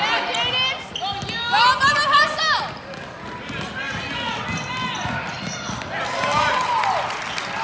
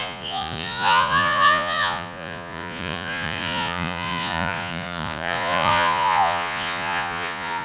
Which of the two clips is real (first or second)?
first